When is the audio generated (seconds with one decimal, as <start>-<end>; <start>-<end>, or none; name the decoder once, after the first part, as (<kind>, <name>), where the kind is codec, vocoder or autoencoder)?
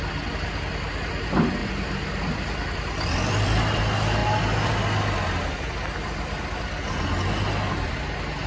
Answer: 1.6-3.8 (vocoder, BigVGAN v2)